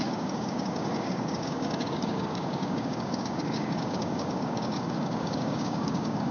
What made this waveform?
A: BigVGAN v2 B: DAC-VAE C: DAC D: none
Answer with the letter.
C